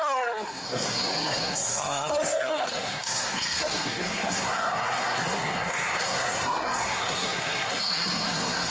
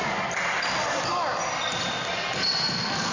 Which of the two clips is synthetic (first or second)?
first